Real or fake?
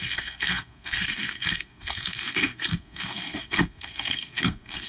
fake